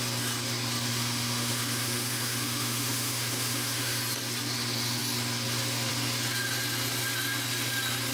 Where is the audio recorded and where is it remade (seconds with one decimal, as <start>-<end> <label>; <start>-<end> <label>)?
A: 0.0-0.9 recorded; 0.9-4.0 remade; 4.0-8.1 recorded